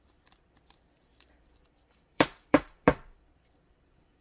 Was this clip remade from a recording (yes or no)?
yes